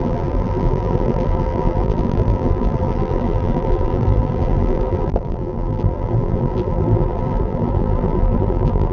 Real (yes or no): no